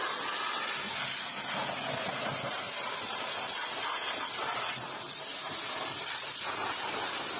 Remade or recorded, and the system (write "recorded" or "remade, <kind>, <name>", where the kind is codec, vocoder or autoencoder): recorded